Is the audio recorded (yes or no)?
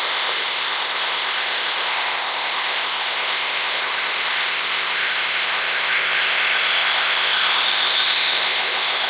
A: no